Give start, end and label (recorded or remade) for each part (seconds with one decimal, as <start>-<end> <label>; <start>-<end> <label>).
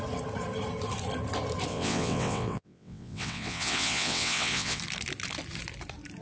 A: 0.0-1.7 recorded; 1.7-4.8 remade; 4.8-6.2 recorded